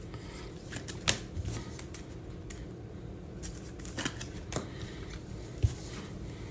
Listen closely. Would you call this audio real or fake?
real